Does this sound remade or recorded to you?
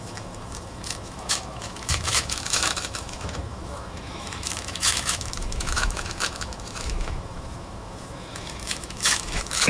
remade